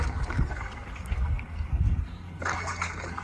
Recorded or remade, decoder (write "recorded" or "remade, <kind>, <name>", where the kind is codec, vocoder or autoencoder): remade, codec, SNAC